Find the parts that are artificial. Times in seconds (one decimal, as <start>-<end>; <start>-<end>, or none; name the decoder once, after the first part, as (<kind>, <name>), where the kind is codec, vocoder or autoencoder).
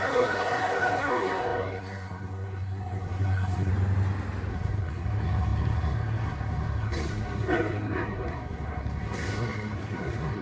0.0-3.7 (codec, SNAC); 4.5-10.4